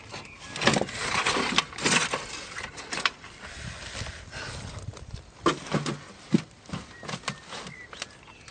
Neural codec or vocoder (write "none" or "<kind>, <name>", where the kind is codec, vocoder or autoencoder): none